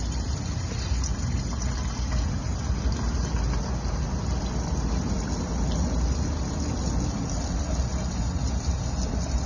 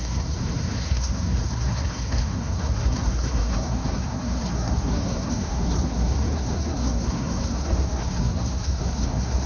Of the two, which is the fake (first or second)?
second